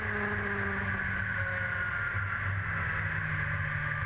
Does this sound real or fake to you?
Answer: real